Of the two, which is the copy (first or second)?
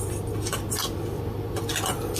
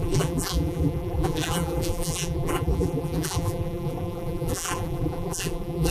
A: second